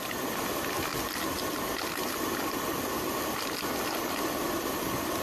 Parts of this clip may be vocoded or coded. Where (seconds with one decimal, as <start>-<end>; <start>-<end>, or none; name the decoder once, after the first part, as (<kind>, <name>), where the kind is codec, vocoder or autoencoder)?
none